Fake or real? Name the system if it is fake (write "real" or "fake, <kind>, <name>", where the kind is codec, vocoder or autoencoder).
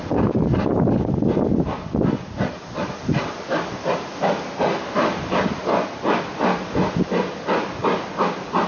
real